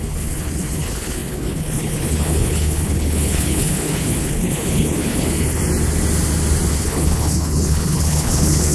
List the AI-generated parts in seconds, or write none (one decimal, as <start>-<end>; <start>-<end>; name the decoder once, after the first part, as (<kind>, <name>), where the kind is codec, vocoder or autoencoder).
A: 0.0-5.6 (codec, HILCodec); 6.7-8.7